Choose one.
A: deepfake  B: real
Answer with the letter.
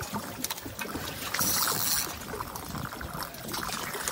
B